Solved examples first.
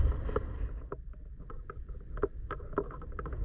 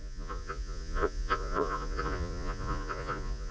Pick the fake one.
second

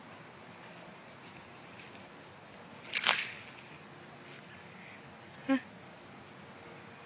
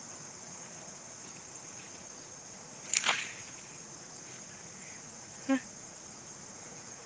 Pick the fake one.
second